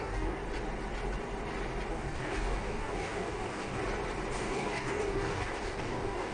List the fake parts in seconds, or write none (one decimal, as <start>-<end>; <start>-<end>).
0.0-0.4; 1.9-3.8; 4.4-6.3